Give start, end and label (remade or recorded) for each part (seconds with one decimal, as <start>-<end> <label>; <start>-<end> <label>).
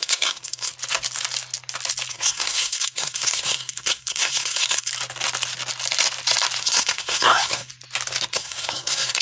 0.0-0.7 remade; 0.7-2.1 recorded; 2.1-4.9 remade; 4.9-6.6 recorded; 6.6-7.7 remade; 7.7-8.3 recorded; 8.3-9.2 remade